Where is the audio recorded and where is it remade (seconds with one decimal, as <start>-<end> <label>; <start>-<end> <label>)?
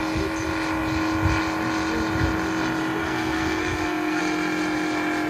0.0-3.0 recorded; 3.0-4.2 remade; 4.2-5.3 recorded